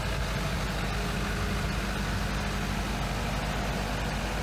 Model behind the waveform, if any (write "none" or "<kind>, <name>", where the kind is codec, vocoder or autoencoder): none